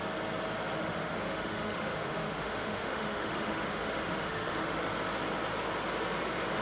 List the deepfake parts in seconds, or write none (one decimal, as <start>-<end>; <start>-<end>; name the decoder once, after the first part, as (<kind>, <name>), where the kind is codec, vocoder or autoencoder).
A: 0.8-4.8 (autoencoder, DAC-VAE)